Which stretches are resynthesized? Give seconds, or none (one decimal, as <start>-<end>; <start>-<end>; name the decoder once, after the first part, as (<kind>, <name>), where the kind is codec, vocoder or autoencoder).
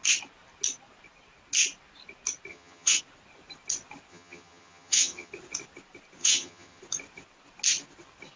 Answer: 2.5-3.0 (vocoder, HiFi-GAN); 4.1-5.3; 6.2-6.8